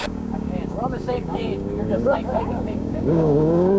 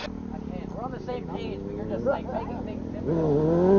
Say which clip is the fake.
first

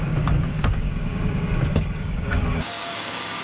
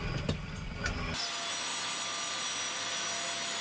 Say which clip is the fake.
first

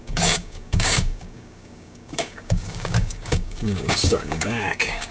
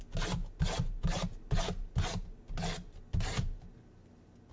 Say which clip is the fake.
first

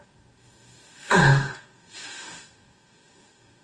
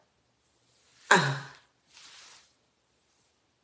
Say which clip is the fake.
first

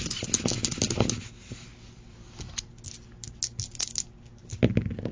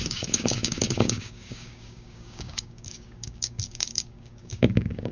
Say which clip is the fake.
second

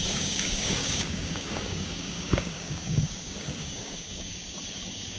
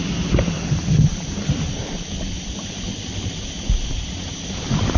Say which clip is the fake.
first